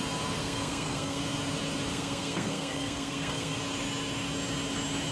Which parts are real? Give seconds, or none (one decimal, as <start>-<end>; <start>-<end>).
0.0-0.4; 1.2-1.9; 3.6-5.1